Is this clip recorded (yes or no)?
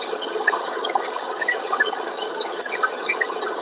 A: no